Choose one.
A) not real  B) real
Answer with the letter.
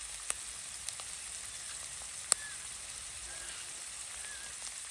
B